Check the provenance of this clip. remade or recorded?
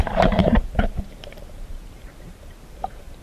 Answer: remade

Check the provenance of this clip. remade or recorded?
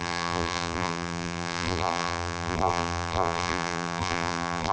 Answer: remade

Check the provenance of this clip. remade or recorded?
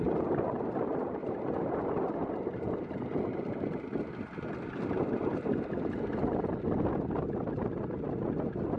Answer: recorded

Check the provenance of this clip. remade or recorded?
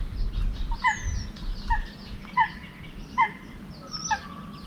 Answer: recorded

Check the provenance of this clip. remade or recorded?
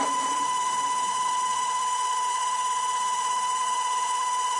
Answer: remade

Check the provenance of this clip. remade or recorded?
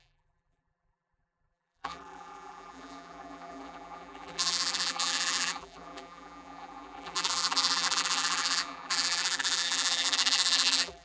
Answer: remade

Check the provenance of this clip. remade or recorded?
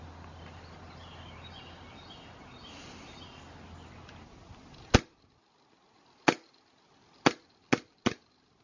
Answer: recorded